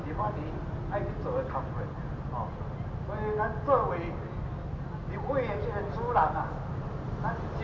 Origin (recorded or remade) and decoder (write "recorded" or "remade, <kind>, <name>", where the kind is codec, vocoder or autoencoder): recorded